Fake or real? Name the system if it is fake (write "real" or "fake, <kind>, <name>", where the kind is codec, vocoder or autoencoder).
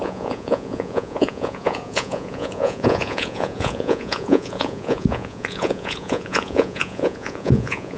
fake, vocoder, Vocos